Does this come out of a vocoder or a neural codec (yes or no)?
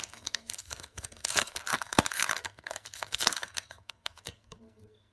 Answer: yes